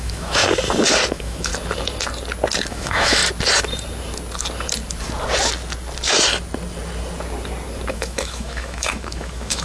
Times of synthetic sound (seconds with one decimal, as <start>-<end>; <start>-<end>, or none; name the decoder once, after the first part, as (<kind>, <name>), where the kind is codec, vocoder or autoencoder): 0.0-0.4 (autoencoder, DAC-VAE); 1.1-1.5; 2.7-3.2; 7.9-9.6